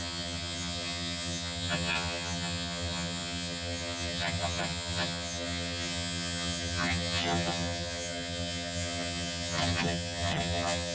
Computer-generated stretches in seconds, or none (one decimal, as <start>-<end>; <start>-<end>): 0.0-10.9